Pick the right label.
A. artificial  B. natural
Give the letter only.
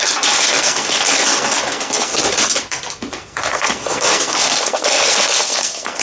A